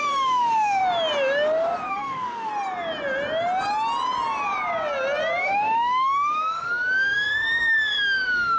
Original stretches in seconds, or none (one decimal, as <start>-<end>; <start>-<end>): 0.8-1.9; 2.5-5.4